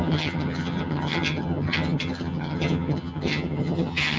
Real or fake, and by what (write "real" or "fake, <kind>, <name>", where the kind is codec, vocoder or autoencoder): fake, vocoder, HiFi-GAN